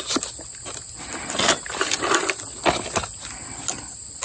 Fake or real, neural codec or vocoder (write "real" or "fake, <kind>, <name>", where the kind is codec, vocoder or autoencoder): real